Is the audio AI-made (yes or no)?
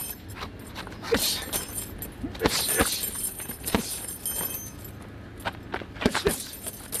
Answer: no